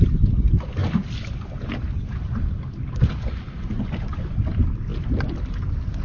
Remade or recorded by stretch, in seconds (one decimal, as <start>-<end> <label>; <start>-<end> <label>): 0.0-6.0 recorded